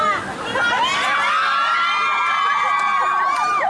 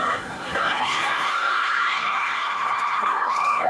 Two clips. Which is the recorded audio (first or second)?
first